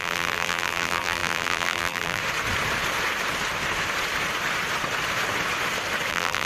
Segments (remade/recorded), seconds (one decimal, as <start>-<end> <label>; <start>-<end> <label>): 0.0-2.2 remade; 2.2-6.1 recorded; 6.1-6.5 remade